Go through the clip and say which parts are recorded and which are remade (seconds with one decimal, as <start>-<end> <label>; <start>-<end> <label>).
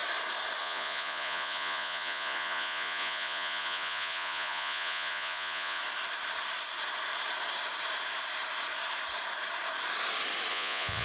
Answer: 0.0-0.6 recorded; 0.6-5.8 remade; 5.8-10.5 recorded; 10.5-11.0 remade